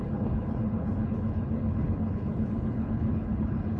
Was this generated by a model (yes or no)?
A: yes